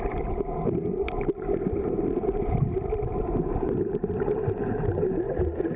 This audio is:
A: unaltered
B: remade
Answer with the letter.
A